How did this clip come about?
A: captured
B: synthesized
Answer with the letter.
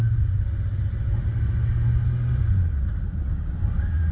A